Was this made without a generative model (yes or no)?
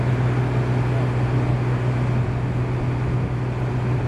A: yes